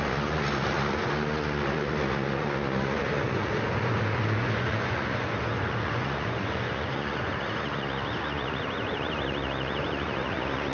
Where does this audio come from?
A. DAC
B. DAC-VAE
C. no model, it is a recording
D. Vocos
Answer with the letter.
D